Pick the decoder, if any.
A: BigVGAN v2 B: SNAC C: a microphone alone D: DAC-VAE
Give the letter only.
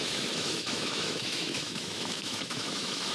D